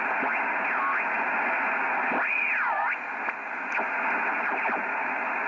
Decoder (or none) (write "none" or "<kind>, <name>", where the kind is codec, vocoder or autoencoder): none